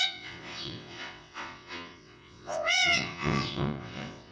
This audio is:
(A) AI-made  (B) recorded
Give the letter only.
A